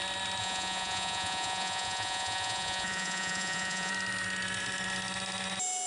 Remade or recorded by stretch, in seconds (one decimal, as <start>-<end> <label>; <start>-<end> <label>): 0.0-0.4 recorded; 0.4-3.9 remade; 3.9-5.9 recorded